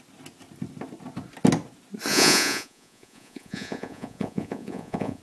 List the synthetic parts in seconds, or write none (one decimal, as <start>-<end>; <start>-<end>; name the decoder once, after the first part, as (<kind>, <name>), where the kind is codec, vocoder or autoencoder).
2.1-5.2 (vocoder, Vocos)